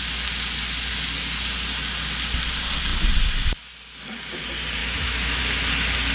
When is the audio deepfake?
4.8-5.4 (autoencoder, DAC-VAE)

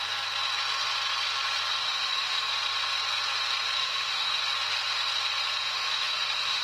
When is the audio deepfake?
1.8-2.5 (autoencoder, DAC-VAE); 3.8-4.4; 5.6-6.6

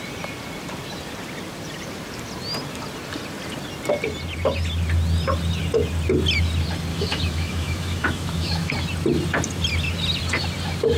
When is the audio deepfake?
6.9-8.7 (autoencoder, DAC-VAE)

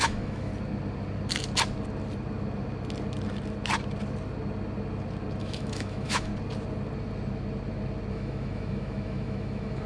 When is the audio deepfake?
0.0-0.5 (autoencoder, DAC-VAE); 5.4-6.3; 8.1-9.9

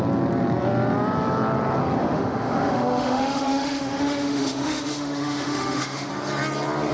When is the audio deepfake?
2.0-6.1 (autoencoder, DAC-VAE)